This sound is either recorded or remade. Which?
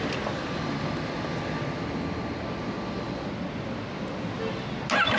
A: recorded